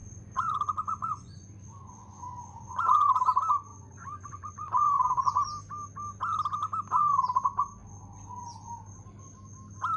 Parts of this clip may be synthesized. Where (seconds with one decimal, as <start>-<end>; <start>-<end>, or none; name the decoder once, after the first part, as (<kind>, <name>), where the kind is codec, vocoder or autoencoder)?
0.0-3.1 (vocoder, Vocos); 3.7-5.3